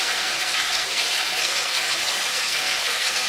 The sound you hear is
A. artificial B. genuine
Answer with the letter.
A